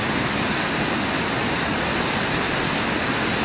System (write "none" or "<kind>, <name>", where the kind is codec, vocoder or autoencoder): none